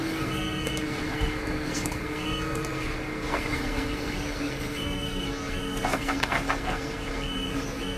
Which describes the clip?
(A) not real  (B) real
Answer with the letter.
A